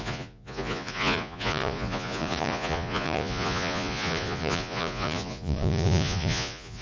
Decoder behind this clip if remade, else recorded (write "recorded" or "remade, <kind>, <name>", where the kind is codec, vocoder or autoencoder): remade, vocoder, Vocos